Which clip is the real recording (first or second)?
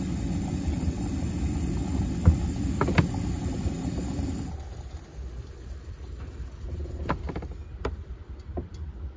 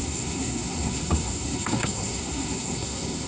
first